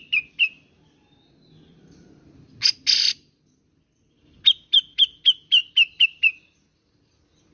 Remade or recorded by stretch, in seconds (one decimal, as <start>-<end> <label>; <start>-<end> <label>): 0.0-5.6 recorded; 5.6-7.0 remade; 7.0-7.5 recorded